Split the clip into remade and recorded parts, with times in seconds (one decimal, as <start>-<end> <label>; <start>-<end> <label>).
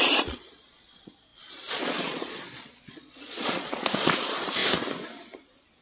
0.0-4.6 remade; 4.6-5.8 recorded